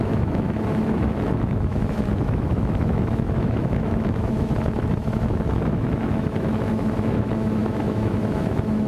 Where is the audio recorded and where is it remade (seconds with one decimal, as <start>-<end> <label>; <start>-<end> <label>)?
0.0-8.9 remade